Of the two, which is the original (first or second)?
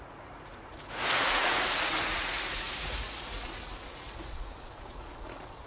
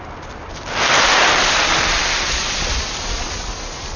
second